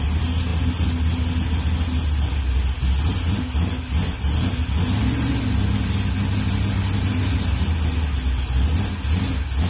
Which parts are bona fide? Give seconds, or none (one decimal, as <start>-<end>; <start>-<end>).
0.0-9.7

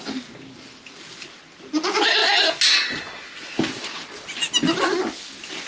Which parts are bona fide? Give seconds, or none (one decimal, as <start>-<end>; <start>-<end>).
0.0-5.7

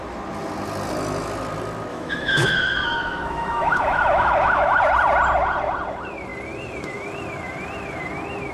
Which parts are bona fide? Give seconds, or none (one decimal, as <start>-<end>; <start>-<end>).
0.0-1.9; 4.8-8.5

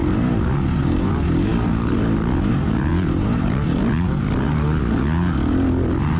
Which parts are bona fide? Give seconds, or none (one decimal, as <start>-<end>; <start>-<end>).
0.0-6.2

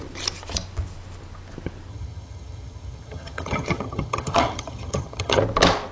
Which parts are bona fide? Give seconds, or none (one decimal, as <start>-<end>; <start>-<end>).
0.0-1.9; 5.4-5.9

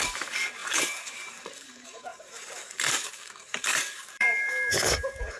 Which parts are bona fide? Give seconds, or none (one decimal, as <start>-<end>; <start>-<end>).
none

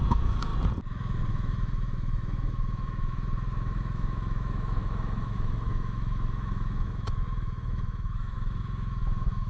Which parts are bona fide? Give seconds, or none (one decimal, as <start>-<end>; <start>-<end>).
0.5-1.3

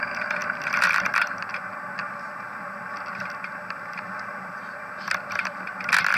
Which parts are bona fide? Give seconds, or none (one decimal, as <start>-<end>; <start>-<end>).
0.0-6.2